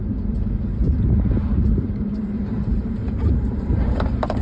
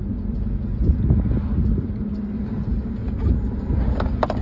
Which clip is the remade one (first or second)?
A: first